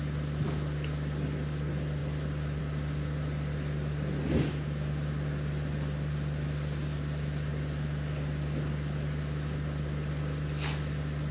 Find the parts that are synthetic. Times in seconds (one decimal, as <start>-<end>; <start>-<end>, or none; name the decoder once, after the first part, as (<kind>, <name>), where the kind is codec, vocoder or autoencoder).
none